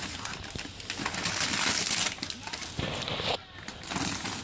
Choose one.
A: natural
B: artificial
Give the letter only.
A